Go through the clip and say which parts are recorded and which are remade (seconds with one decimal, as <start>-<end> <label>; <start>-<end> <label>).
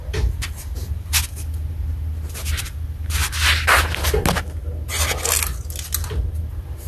0.0-6.9 recorded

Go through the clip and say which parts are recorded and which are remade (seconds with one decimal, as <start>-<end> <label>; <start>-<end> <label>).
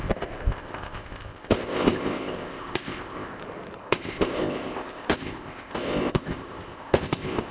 0.0-3.4 remade; 3.4-3.8 recorded; 3.8-7.5 remade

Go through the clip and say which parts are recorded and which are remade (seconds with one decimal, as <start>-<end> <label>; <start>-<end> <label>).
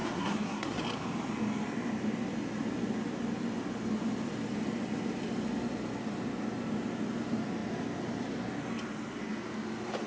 0.0-0.8 remade; 0.8-10.1 recorded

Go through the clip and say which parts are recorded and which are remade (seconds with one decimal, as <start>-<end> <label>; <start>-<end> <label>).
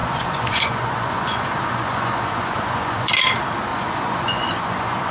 0.0-3.1 remade; 3.1-3.7 recorded; 3.7-5.1 remade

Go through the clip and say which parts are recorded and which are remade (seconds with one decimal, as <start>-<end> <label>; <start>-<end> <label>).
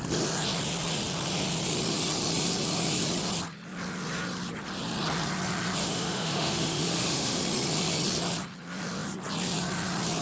0.0-5.8 recorded; 5.8-7.4 remade; 7.4-10.2 recorded